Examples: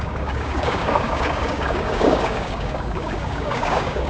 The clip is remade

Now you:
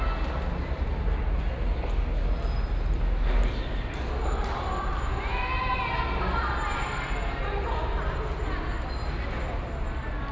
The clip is recorded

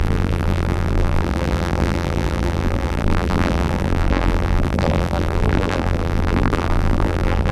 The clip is remade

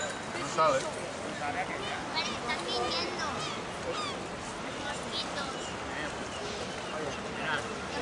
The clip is recorded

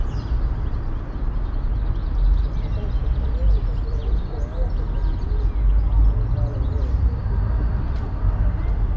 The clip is recorded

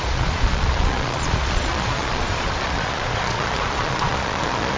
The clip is remade